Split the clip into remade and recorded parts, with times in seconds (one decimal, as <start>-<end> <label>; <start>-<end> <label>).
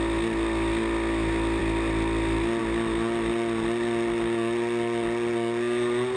0.0-6.2 recorded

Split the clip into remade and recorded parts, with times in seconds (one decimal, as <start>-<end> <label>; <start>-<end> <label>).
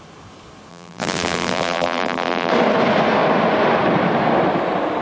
0.0-0.7 recorded; 0.7-2.5 remade; 2.5-5.0 recorded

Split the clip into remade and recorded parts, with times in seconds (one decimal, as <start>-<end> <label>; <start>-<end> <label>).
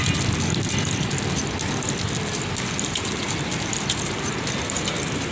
0.0-5.3 recorded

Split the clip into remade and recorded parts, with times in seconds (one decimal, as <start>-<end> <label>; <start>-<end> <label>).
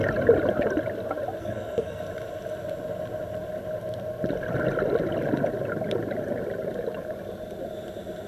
0.0-1.4 recorded; 1.4-2.0 remade; 2.0-8.3 recorded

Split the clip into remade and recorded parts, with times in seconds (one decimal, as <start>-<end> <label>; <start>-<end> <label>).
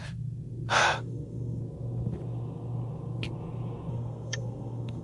0.0-0.7 recorded; 0.7-1.6 remade; 1.6-3.9 recorded; 3.9-5.0 remade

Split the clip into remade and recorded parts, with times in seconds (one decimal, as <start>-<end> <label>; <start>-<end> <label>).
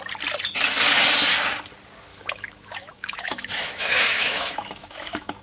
0.0-2.1 recorded; 2.1-5.4 remade